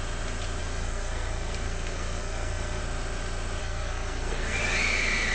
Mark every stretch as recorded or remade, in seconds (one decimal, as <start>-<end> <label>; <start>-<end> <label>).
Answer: 0.0-0.6 recorded; 0.6-2.8 remade; 2.8-3.6 recorded; 3.6-4.6 remade; 4.6-5.3 recorded